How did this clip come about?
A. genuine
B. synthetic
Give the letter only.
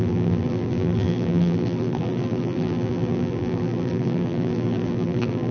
B